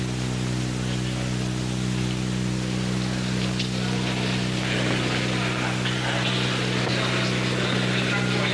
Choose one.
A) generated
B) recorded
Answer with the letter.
B